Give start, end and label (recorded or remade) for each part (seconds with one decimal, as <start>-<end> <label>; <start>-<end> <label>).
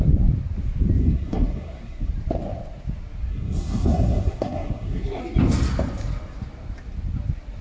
0.0-1.0 recorded; 1.0-2.1 remade; 2.1-3.3 recorded; 3.3-5.2 remade; 5.2-7.6 recorded